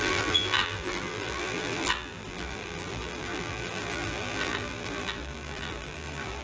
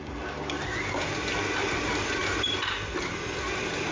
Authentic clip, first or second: second